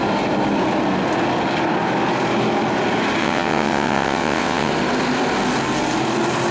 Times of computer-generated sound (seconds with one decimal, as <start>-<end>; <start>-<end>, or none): 3.2-4.7